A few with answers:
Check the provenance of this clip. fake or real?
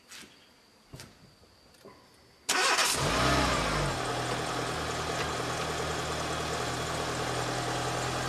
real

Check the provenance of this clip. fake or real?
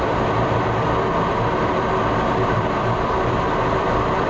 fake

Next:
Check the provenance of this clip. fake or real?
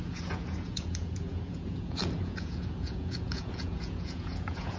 fake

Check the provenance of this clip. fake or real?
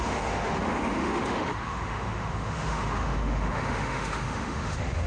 fake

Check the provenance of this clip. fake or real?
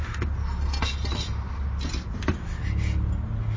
real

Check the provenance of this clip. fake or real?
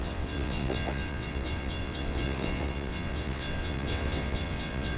fake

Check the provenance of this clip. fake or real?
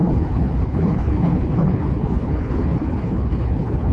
fake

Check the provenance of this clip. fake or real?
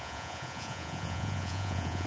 fake